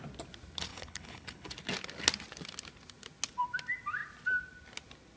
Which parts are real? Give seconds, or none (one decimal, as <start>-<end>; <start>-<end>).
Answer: 0.0-0.7; 1.5-5.2